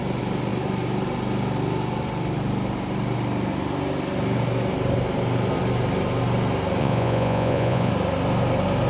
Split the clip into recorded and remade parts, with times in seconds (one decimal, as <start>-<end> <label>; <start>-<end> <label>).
0.0-6.8 recorded; 6.8-7.9 remade; 7.9-8.9 recorded

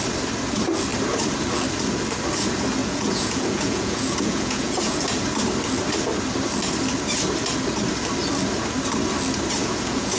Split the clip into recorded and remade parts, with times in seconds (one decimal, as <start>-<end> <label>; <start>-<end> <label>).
0.0-2.8 recorded; 2.8-5.0 remade; 5.0-9.6 recorded; 9.6-10.2 remade

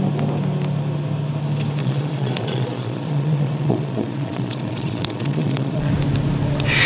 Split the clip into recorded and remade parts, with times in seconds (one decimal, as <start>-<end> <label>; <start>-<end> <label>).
0.0-1.8 recorded; 1.8-5.9 remade; 5.9-6.9 recorded

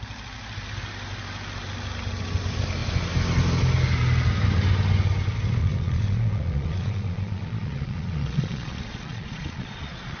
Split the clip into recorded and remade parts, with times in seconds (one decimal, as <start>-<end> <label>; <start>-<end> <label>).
0.0-5.6 recorded; 5.6-10.2 remade

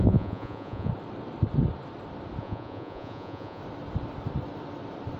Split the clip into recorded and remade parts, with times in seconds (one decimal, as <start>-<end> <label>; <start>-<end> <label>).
0.0-0.9 remade; 0.9-2.4 recorded; 2.4-3.6 remade; 3.6-5.2 recorded

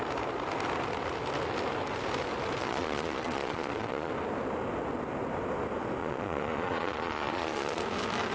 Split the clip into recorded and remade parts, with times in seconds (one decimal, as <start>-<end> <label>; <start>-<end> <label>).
0.0-2.6 recorded; 2.6-4.1 remade; 4.1-6.0 recorded; 6.0-7.8 remade; 7.8-8.3 recorded

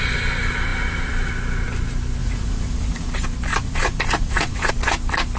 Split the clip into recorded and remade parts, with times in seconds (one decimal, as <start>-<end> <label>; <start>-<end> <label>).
0.0-2.2 recorded; 2.2-3.1 remade; 3.1-3.5 recorded; 3.5-4.7 remade; 4.7-5.4 recorded